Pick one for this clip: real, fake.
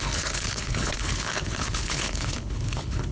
fake